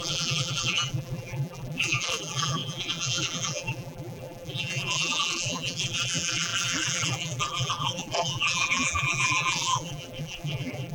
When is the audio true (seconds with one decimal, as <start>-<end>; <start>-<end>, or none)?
none